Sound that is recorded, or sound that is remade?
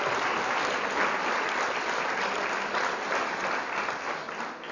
recorded